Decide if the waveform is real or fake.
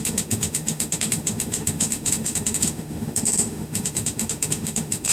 fake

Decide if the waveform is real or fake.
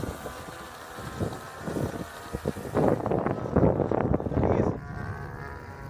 real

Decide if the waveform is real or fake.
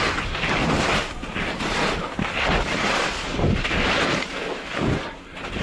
real